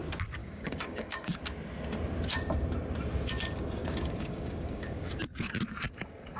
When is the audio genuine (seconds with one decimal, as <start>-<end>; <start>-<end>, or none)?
0.0-0.4; 1.4-3.8; 5.1-6.4